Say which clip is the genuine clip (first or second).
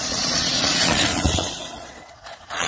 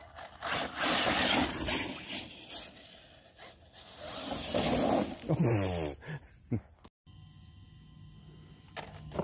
second